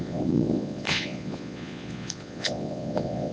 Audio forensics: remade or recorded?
remade